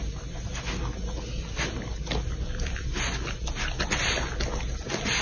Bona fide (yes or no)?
yes